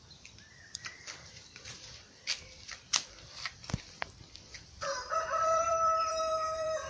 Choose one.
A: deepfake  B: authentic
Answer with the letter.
A